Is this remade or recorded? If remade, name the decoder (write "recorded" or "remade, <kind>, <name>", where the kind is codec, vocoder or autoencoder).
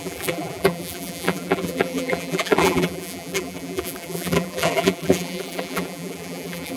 remade, vocoder, BigVGAN v2